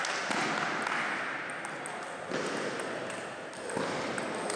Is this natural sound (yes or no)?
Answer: yes